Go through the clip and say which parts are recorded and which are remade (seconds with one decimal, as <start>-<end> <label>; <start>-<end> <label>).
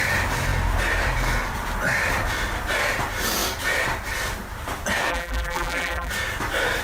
0.0-5.1 recorded; 5.1-6.1 remade; 6.1-6.8 recorded